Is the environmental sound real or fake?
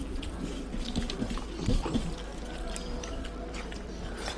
real